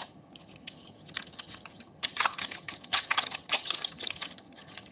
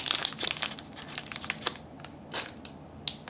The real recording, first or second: second